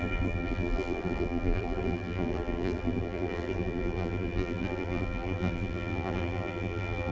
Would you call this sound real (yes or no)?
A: no